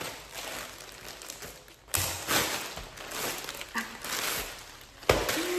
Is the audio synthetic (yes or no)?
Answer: no